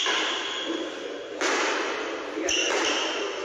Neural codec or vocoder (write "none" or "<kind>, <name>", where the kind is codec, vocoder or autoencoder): none